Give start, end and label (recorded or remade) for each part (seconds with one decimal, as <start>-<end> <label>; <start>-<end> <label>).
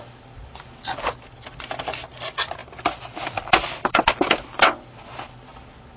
0.0-6.0 recorded